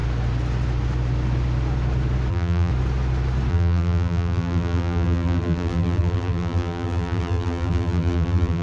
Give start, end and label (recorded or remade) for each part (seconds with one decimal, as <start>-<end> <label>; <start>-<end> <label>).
0.0-2.3 recorded; 2.3-2.7 remade; 2.7-3.5 recorded; 3.5-8.6 remade